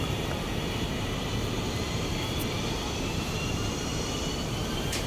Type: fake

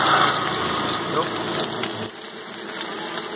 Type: real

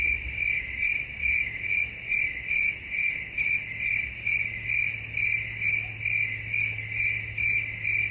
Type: real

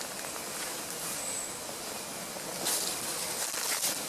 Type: real